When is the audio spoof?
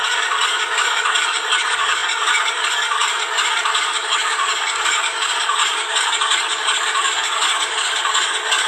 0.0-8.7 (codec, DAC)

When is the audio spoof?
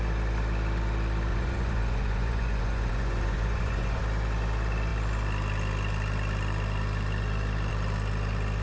1.3-4.0 (vocoder, Vocos)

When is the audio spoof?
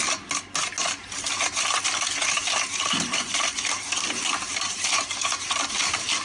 2.4-3.9 (vocoder, BigVGAN v2); 4.5-5.7